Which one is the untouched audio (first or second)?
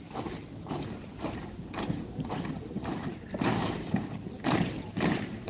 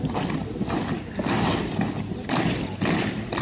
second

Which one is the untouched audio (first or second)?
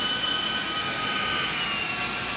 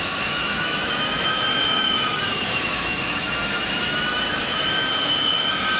first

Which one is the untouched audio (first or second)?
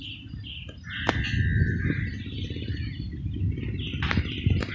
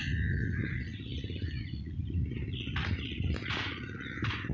first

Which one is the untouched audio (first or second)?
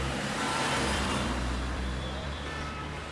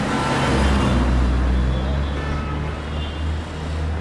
second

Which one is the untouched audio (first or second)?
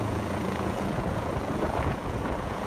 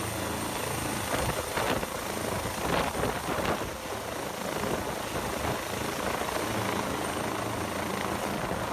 second